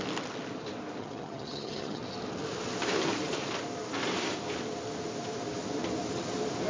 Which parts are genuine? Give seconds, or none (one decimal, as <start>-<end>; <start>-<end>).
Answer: 0.0-1.0; 2.0-6.7